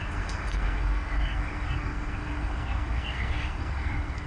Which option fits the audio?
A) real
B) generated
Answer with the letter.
B